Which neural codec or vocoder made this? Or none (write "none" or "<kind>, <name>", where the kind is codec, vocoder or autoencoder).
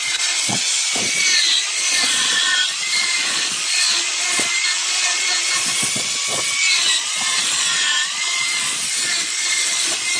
vocoder, Vocos